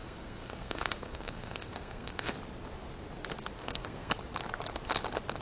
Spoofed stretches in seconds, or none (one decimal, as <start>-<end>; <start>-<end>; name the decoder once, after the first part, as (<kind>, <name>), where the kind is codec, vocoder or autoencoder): 0.0-2.3 (codec, SNAC); 3.6-4.1